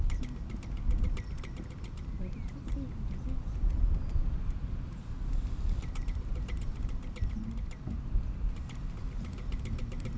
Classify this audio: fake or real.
real